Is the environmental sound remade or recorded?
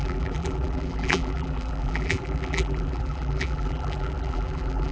remade